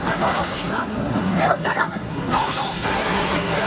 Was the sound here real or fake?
fake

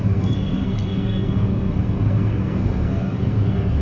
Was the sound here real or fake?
fake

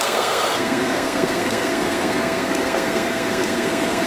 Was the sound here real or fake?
fake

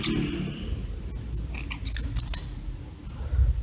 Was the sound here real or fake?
real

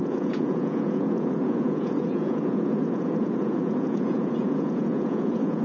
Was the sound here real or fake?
fake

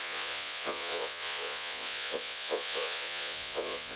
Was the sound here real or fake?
fake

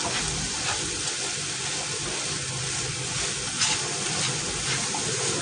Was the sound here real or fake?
real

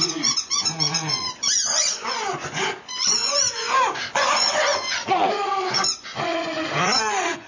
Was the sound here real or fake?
fake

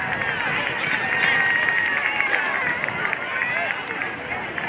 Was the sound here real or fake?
real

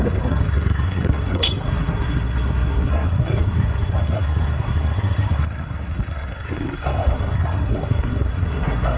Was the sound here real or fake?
fake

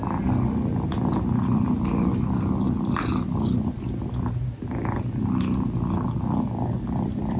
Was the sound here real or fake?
real